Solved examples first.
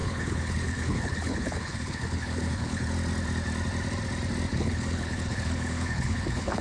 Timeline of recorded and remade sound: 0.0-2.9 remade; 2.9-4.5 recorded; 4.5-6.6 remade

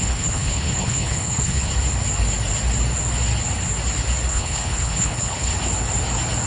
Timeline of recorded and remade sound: 0.0-1.7 remade; 1.7-4.3 recorded; 4.3-5.5 remade; 5.5-6.5 recorded

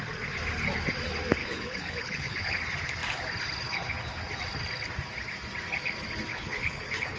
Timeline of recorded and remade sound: 0.0-1.4 recorded; 1.4-2.6 remade; 2.6-6.3 recorded; 6.3-7.2 remade

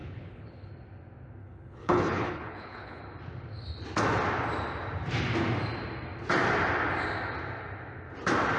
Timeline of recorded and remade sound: 0.0-0.7 remade; 0.7-1.4 recorded; 1.4-3.0 remade; 3.0-8.6 recorded